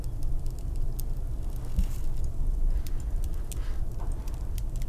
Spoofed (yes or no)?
no